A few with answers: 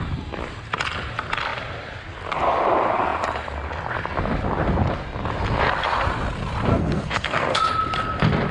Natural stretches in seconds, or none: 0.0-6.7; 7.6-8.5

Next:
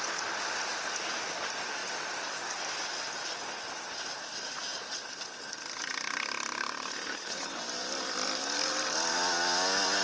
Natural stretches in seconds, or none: 0.0-7.1; 7.6-10.0

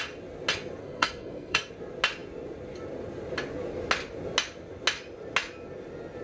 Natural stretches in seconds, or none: 0.0-0.8; 1.7-6.2